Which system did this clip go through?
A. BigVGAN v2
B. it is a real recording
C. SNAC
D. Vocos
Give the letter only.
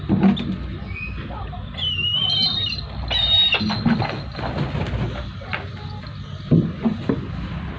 B